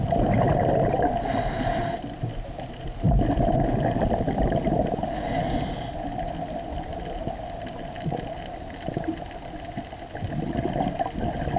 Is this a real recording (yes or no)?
yes